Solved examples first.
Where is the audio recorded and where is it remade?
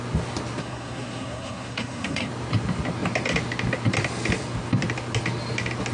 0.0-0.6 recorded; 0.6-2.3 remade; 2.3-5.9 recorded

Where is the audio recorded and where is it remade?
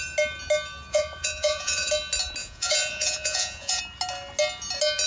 0.0-0.9 recorded; 0.9-1.9 remade; 1.9-2.4 recorded; 2.4-3.8 remade; 3.8-5.1 recorded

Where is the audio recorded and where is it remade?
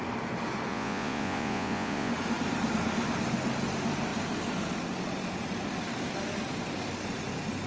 0.0-0.7 recorded; 0.7-2.1 remade; 2.1-7.7 recorded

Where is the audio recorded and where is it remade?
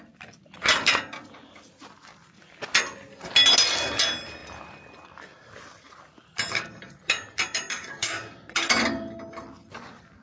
0.0-4.4 recorded; 4.4-7.9 remade; 7.9-10.2 recorded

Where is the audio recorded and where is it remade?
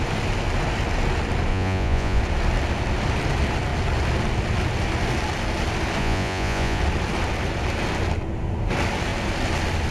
0.0-1.5 recorded; 1.5-2.2 remade; 2.2-6.0 recorded; 6.0-6.8 remade; 6.8-9.9 recorded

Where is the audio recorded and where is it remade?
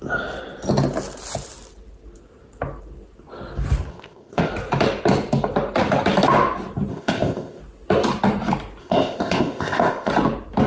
0.0-3.9 recorded; 3.9-4.5 remade; 4.5-6.9 recorded; 6.9-7.6 remade; 7.6-8.8 recorded; 8.8-10.1 remade; 10.1-10.7 recorded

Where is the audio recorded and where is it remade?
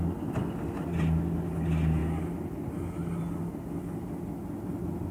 0.0-5.1 recorded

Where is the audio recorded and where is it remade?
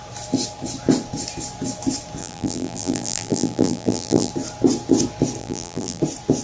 0.0-2.2 recorded; 2.2-4.3 remade; 4.3-5.4 recorded; 5.4-6.0 remade; 6.0-6.4 recorded